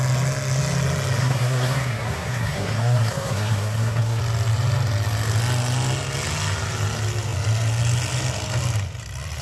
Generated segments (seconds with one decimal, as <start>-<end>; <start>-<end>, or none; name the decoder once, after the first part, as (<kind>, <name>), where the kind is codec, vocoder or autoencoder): 1.2-4.2 (codec, SNAC)